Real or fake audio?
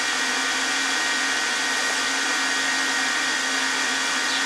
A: real